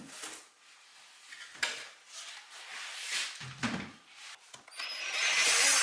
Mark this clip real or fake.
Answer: real